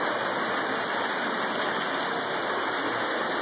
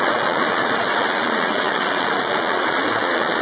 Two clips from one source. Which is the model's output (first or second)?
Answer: second